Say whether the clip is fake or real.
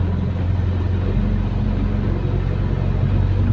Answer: real